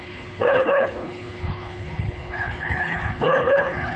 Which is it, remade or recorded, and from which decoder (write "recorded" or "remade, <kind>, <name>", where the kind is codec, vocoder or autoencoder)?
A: remade, codec, HILCodec